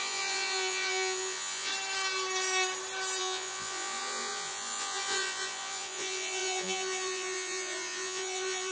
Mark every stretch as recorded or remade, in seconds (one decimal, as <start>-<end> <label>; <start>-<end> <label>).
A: 0.0-1.7 remade; 1.7-3.2 recorded; 3.2-8.7 remade